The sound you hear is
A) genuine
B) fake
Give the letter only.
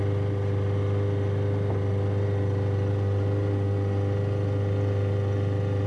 A